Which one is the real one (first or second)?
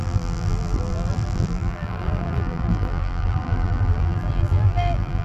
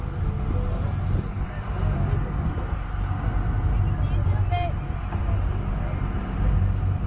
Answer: second